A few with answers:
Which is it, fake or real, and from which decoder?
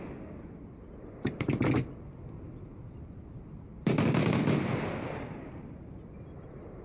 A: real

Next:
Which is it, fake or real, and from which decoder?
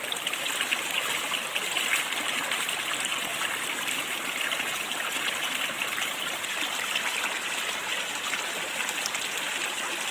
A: real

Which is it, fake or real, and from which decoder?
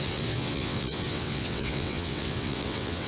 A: fake, vocoder, WaveNeXt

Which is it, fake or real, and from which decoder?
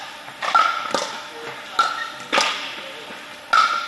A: real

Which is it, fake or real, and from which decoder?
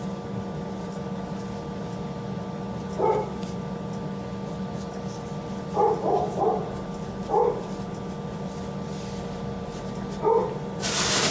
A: real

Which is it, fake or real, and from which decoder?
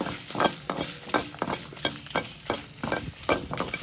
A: real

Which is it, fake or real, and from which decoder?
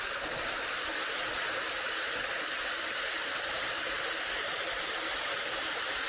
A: real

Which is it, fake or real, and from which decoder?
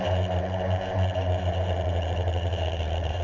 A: fake, vocoder, BigVGAN v2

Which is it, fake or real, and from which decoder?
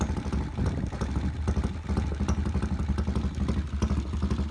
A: real